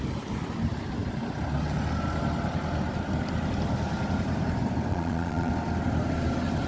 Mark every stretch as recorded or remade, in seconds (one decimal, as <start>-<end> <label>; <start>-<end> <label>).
0.0-4.9 recorded; 4.9-5.5 remade; 5.5-6.7 recorded